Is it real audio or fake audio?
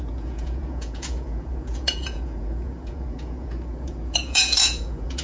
fake